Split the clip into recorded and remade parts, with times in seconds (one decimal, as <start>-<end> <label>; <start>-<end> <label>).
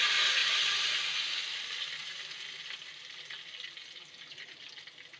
0.0-5.2 recorded